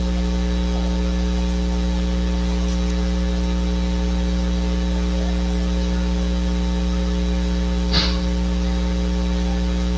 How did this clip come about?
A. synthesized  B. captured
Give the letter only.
B